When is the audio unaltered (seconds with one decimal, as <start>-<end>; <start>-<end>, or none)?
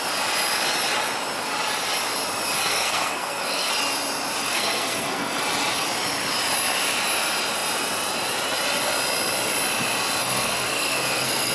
0.0-2.7; 3.7-4.4; 5.4-10.2